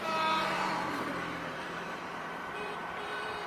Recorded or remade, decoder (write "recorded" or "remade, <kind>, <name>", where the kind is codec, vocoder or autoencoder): remade, vocoder, BigVGAN v2